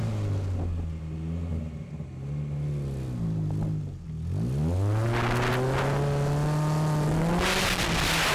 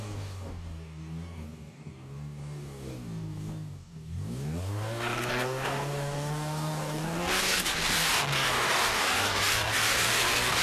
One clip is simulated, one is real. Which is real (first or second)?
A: first